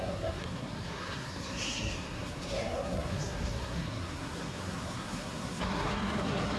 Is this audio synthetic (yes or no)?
yes